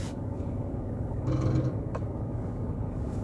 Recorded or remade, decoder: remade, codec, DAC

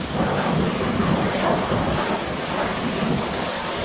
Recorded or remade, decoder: remade, codec, DAC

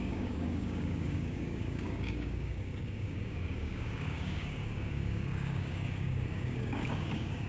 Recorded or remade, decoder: remade, codec, DAC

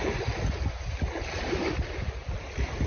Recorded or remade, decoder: recorded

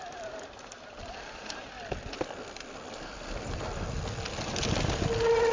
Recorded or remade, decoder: recorded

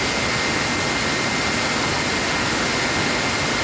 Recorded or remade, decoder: recorded